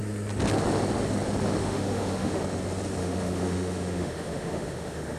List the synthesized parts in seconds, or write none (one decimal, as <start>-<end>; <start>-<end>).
1.6-2.4; 3.0-5.2